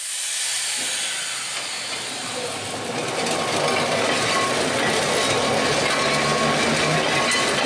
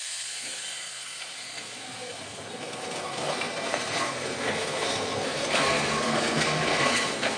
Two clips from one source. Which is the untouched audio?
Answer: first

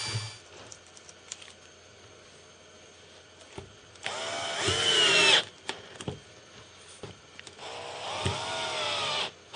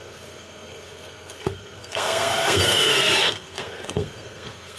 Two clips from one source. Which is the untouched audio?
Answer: first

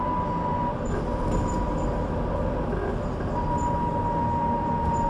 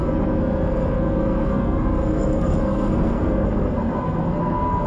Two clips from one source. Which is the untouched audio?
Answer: first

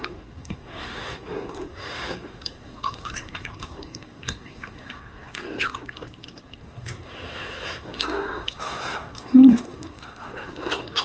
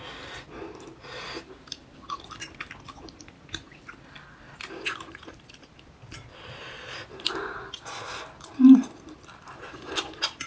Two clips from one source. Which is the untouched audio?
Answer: second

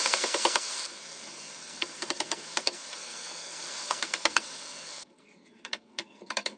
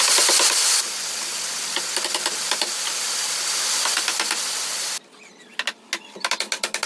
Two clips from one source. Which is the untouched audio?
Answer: second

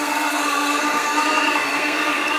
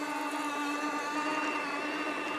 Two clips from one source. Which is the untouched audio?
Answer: second